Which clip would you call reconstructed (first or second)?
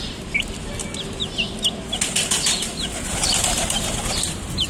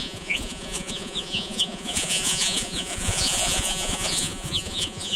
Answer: second